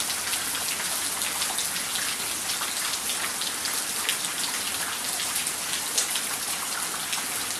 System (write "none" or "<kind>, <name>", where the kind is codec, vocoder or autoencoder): none